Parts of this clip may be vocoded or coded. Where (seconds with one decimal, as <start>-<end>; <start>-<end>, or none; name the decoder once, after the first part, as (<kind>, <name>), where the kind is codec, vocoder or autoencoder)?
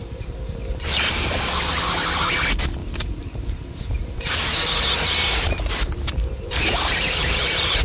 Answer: 0.0-1.4 (vocoder, BigVGAN v2); 2.8-7.8